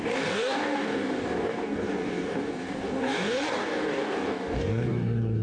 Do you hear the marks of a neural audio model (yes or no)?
yes